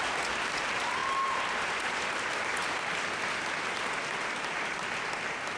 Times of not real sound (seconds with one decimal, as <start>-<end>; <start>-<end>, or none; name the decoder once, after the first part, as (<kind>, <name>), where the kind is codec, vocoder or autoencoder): none